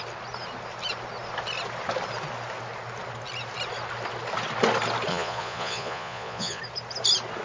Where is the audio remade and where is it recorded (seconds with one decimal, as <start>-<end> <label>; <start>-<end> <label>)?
0.0-5.1 recorded; 5.1-6.6 remade; 6.6-7.4 recorded